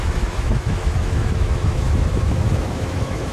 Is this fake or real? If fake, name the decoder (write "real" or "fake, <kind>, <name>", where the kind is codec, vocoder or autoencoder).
fake, autoencoder, DAC-VAE